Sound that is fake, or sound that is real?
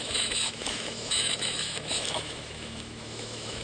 fake